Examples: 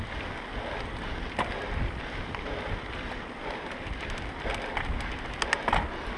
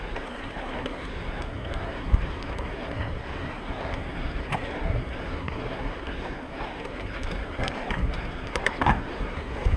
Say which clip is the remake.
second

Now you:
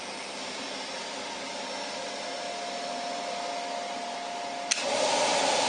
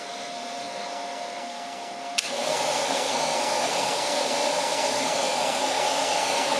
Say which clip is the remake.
second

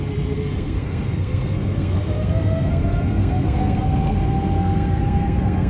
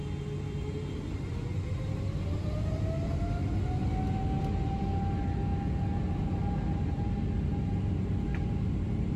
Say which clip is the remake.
first